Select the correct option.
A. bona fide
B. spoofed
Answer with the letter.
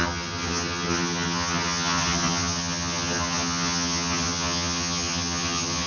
B